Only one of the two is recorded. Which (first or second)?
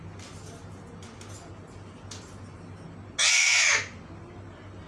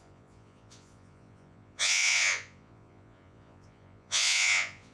first